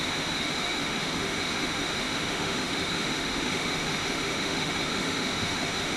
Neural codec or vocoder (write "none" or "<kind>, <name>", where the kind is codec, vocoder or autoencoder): autoencoder, DAC-VAE